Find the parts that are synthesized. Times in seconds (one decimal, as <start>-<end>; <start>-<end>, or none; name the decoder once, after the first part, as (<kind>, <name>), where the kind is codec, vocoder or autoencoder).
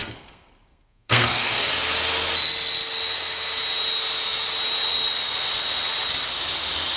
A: 0.0-1.7 (codec, SNAC)